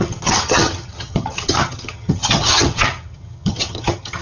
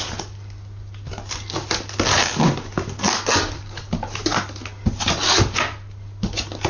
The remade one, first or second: first